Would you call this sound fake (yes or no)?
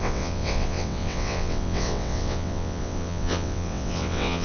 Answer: yes